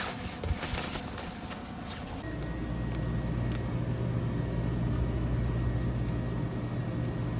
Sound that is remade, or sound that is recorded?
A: recorded